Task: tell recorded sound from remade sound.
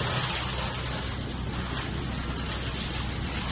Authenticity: recorded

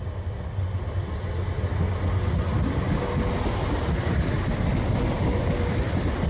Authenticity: recorded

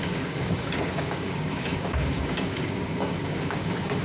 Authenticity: remade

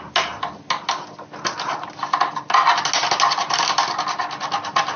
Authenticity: recorded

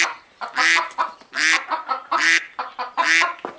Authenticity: recorded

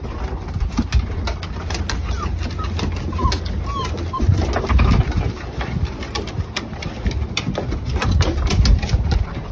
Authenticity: recorded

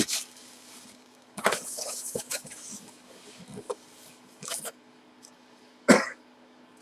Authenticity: remade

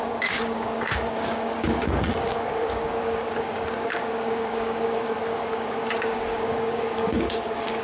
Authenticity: remade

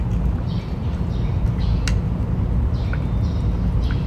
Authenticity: recorded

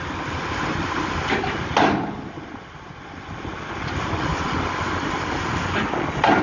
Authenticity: recorded